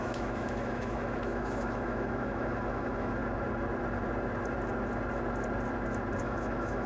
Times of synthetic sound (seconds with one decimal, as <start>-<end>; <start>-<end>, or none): 0.0-3.2; 6.2-6.9